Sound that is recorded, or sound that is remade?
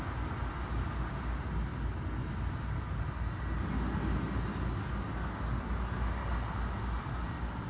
recorded